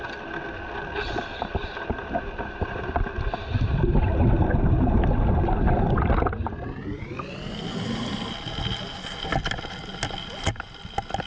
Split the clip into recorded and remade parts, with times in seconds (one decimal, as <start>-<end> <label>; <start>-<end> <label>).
0.0-1.6 recorded; 1.6-2.8 remade; 2.8-11.3 recorded